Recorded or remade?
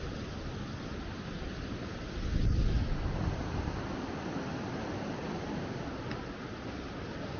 recorded